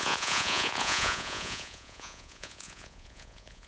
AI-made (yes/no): yes